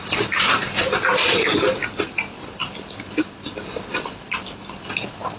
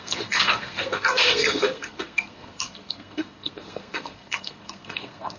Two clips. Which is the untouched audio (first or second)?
first